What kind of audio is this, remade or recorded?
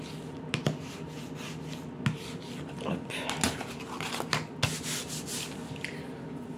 recorded